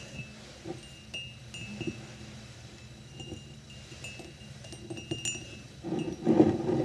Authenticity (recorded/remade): recorded